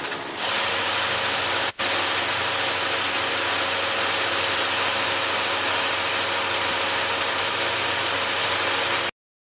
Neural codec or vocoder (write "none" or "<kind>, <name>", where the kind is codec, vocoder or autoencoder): none